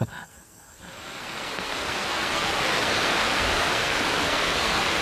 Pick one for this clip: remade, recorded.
remade